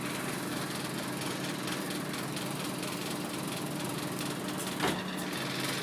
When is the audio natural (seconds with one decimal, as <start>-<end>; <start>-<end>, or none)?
0.0-0.5; 4.0-5.8

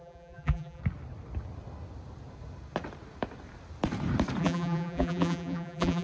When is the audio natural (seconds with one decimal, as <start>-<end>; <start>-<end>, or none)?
0.8-4.4

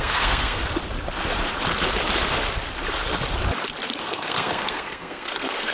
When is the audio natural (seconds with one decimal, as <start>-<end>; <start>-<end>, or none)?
0.6-4.0

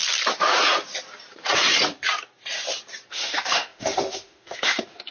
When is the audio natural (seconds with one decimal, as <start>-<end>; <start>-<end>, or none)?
0.0-3.1

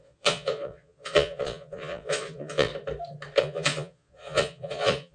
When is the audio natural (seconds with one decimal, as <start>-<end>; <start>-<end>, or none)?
2.7-3.4

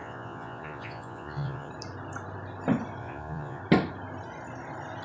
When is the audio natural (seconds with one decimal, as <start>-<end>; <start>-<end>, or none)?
1.7-3.0; 3.6-5.0

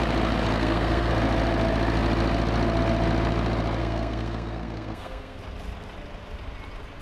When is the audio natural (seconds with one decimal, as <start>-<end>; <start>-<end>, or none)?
0.0-0.5; 1.1-3.8; 5.4-7.0

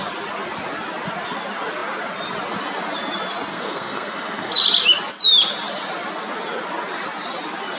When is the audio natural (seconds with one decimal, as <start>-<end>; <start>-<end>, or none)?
0.0-3.5; 4.5-7.8